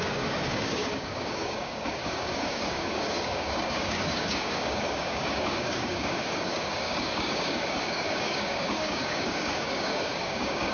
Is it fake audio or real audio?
fake